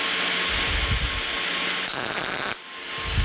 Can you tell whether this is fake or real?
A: real